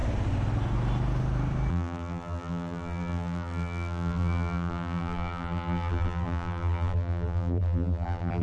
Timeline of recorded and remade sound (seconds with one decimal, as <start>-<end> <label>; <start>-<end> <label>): 0.0-1.7 recorded; 1.7-8.4 remade